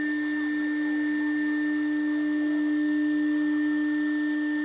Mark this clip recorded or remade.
recorded